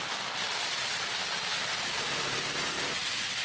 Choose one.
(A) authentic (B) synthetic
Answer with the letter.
A